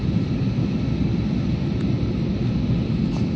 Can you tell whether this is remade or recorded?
recorded